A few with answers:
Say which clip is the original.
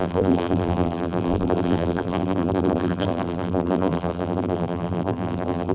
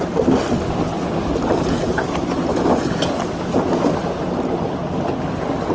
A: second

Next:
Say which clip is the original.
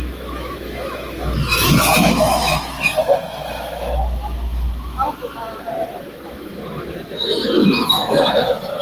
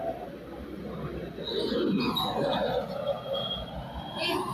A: second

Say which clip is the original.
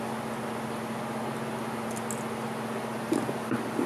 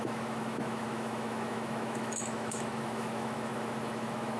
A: first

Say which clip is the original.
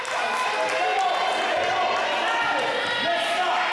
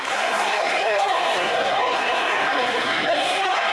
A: first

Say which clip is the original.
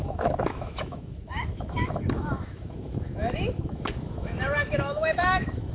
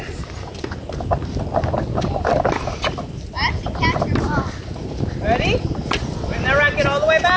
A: second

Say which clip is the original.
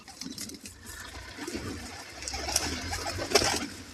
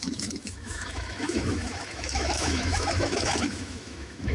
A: first